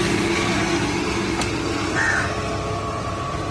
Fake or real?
real